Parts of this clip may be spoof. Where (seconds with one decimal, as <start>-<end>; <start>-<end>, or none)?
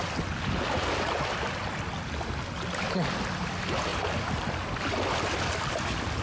none